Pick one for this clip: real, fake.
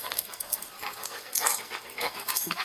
fake